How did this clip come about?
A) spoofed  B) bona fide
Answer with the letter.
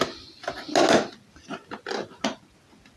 B